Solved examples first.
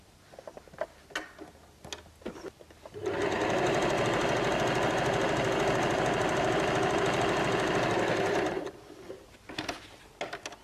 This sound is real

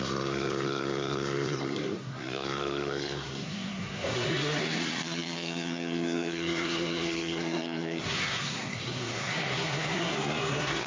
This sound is fake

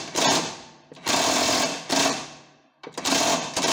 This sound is real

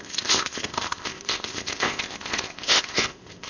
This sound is fake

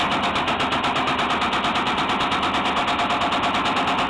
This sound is real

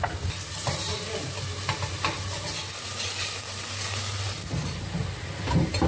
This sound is real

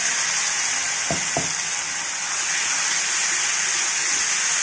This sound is real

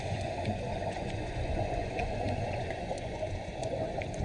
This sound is fake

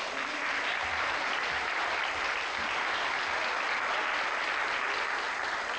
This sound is real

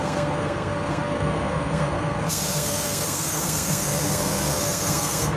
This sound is fake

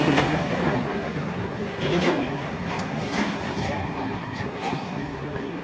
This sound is fake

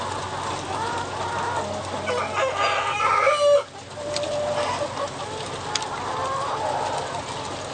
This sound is real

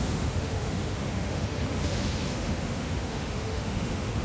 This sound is fake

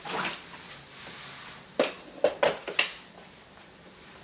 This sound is real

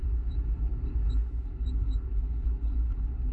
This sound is real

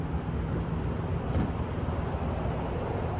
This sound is real